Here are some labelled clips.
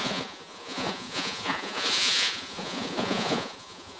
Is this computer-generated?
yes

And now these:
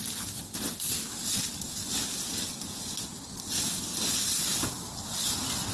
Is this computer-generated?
no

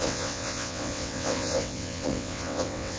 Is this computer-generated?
yes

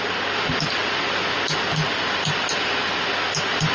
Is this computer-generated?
no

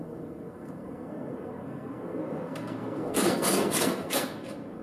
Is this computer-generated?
yes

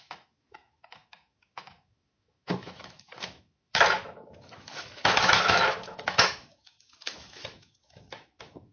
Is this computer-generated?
yes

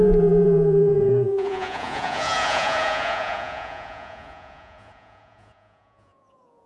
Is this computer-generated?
yes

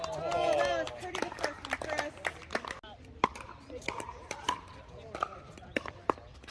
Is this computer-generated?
no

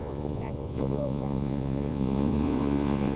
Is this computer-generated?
yes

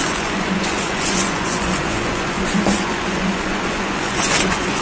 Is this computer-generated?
yes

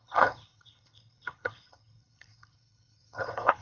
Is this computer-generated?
yes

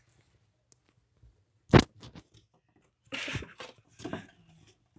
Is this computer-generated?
no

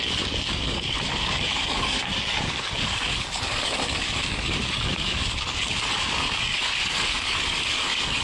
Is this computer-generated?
yes